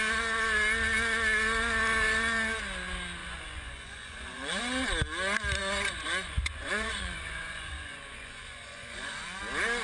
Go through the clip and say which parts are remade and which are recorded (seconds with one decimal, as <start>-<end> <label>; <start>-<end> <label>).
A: 0.0-3.2 recorded; 3.2-4.6 remade; 4.6-5.6 recorded; 5.6-9.4 remade; 9.4-9.8 recorded